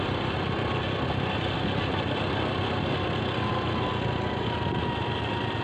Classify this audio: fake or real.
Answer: real